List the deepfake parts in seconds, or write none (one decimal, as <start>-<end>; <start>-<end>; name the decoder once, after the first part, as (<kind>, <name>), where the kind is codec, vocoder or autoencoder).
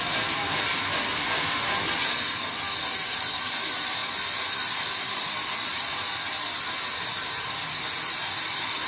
0.0-0.9 (vocoder, BigVGAN v2); 2.0-8.9